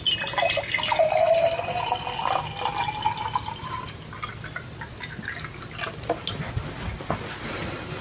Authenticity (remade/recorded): recorded